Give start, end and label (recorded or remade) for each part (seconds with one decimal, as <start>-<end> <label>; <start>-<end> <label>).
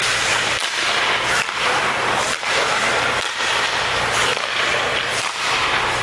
0.0-4.9 remade; 4.9-6.0 recorded